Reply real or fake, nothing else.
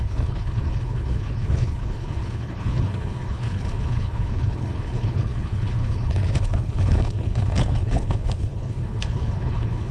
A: fake